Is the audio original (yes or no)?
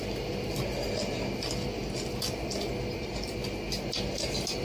yes